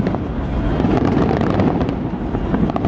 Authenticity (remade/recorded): remade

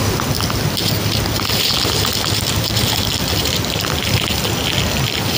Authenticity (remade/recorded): recorded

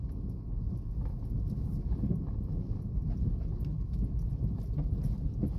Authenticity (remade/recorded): recorded